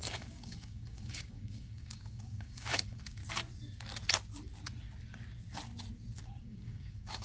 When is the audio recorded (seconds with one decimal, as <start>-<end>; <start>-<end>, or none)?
3.2-6.4